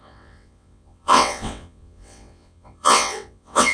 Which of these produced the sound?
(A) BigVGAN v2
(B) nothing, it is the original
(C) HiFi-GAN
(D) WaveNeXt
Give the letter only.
D